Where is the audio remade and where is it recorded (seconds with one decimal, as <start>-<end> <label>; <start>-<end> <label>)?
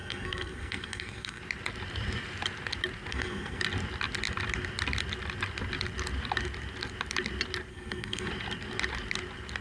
0.0-1.4 remade; 1.4-3.1 recorded; 3.1-3.6 remade; 3.6-7.7 recorded; 7.7-8.3 remade; 8.3-9.6 recorded